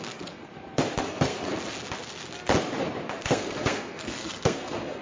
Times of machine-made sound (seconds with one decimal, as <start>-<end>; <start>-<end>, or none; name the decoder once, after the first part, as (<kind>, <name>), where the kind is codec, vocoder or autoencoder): 0.0-0.5 (codec, SNAC); 1.0-1.5; 3.3-5.0

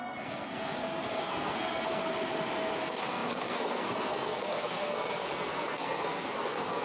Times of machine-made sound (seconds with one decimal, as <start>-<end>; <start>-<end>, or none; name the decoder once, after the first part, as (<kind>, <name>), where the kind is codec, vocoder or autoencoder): 0.0-2.0 (codec, SNAC); 2.8-6.8

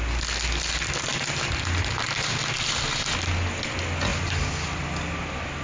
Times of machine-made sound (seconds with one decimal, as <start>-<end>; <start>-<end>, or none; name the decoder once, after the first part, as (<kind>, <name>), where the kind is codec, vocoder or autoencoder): 4.1-4.8 (vocoder, BigVGAN v2)

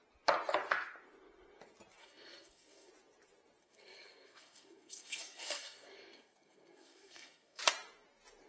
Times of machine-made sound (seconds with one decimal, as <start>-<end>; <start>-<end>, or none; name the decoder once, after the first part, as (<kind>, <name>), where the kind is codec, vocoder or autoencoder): 2.0-2.9 (codec, SNAC); 3.6-7.6